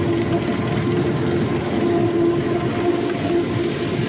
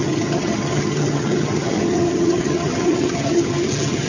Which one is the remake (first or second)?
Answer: second